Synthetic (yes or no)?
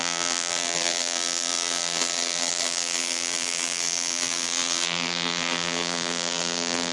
yes